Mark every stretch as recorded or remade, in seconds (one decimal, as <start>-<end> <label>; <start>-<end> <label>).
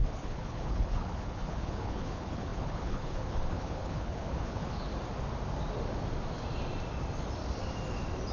0.0-4.9 remade; 4.9-8.3 recorded